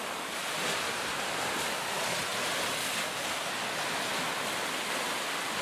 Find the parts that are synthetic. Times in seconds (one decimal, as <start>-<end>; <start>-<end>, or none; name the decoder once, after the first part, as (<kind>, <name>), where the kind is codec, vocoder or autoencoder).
none